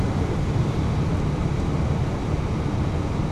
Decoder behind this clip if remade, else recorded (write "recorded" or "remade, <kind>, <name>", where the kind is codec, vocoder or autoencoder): recorded